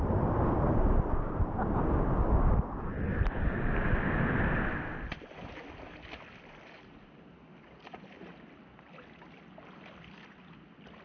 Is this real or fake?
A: real